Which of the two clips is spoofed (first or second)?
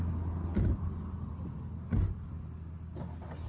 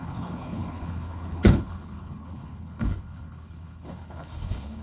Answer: second